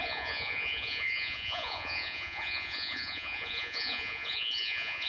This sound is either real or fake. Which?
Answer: fake